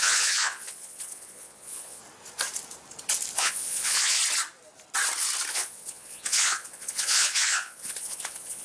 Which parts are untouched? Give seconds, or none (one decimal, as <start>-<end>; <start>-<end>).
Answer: 2.0-3.4; 4.2-5.5